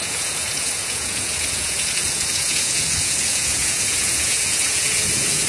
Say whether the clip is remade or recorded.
remade